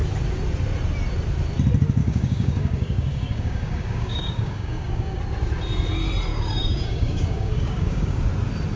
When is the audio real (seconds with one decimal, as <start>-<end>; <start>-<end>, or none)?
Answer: 0.0-2.0; 5.2-6.3; 8.2-8.8